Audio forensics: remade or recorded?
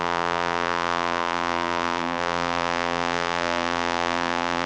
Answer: remade